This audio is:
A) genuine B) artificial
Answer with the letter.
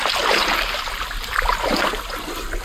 A